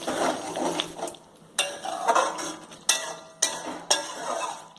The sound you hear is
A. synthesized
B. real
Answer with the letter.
B